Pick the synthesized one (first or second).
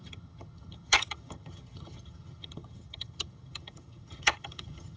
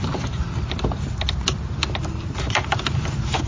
first